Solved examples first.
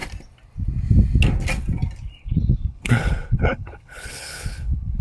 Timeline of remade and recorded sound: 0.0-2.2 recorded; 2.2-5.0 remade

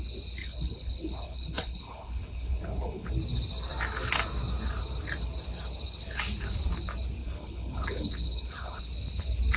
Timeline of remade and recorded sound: 0.0-0.4 recorded; 0.4-3.1 remade; 3.1-7.2 recorded; 7.2-8.8 remade; 8.8-9.6 recorded

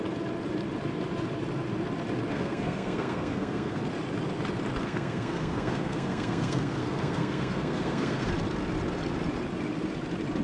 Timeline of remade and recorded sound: 0.0-2.3 recorded; 2.3-3.8 remade; 3.8-4.8 recorded; 4.8-8.3 remade; 8.3-10.4 recorded